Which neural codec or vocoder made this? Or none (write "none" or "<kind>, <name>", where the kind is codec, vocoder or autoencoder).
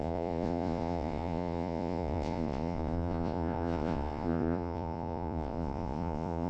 vocoder, Vocos